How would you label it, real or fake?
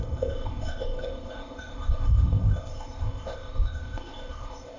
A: fake